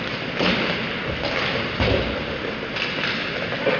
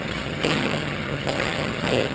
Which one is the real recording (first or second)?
first